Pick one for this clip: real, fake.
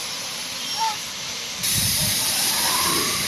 fake